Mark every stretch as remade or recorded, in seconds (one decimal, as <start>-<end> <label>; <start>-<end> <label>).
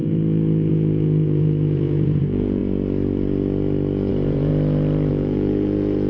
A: 0.0-2.6 remade; 2.6-4.1 recorded; 4.1-4.5 remade; 4.5-5.1 recorded; 5.1-6.1 remade